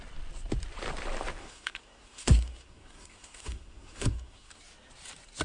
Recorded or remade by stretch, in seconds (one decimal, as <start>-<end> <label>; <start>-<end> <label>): 0.0-1.4 recorded; 1.4-4.6 remade; 4.6-5.4 recorded